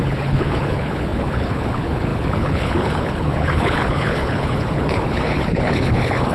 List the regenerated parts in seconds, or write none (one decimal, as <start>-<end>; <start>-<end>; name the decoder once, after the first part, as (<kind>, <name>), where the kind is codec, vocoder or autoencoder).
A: 0.0-6.3 (codec, HILCodec)